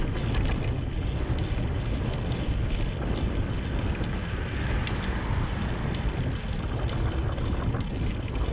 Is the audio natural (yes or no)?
yes